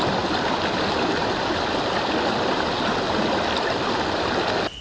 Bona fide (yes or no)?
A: yes